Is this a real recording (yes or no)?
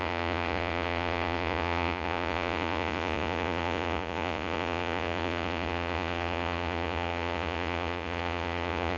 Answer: no